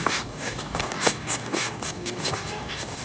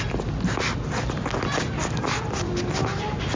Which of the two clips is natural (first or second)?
second